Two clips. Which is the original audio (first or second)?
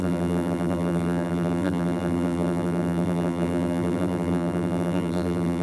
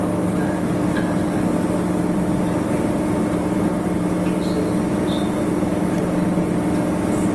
second